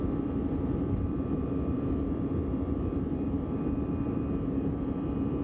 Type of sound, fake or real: fake